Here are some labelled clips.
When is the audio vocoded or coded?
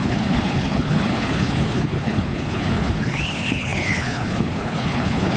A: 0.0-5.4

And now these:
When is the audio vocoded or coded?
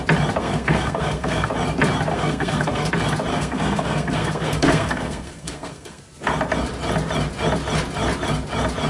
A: 0.4-1.5; 2.1-2.9; 3.3-6.0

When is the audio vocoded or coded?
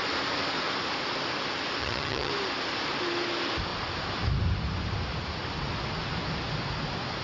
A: 1.8-2.3